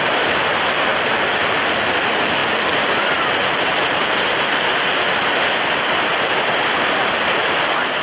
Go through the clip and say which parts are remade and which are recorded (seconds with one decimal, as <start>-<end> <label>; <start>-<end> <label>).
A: 0.0-8.0 remade